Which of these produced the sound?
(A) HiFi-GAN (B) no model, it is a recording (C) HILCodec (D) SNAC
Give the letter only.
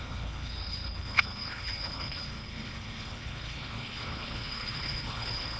C